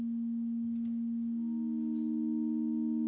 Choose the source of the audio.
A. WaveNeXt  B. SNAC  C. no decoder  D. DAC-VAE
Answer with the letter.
C